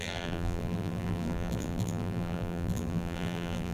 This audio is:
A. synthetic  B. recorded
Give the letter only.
A